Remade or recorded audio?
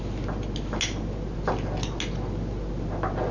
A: recorded